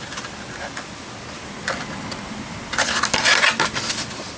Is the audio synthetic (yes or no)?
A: no